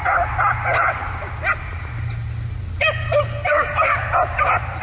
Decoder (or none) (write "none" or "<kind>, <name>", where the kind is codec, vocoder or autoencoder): none